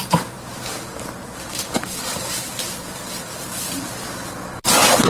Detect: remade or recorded recorded